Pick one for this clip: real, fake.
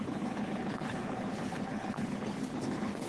fake